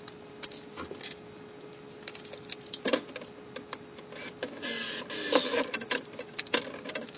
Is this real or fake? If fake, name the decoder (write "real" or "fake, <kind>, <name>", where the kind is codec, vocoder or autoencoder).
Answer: real